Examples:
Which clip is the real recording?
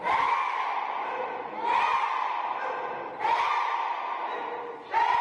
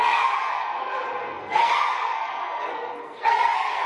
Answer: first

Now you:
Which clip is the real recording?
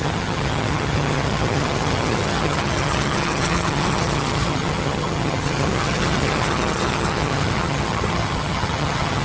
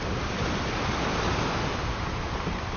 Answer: second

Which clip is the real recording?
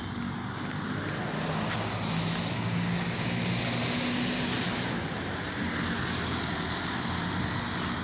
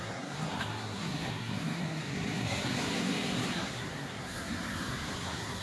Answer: first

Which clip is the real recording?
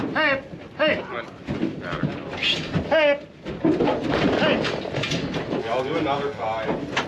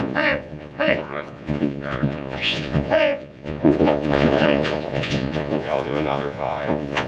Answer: first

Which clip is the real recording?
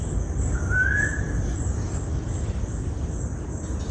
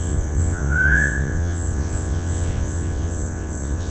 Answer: first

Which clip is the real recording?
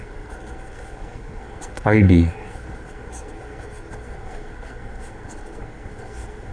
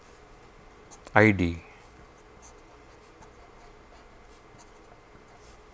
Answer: second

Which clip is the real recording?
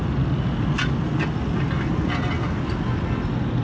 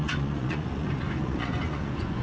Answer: first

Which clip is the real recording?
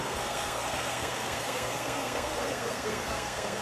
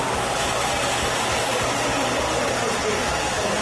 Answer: second